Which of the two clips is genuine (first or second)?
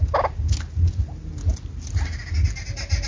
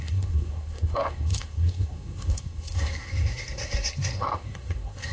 first